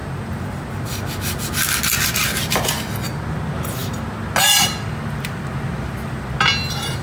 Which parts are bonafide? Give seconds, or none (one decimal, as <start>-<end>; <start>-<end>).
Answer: 0.0-7.0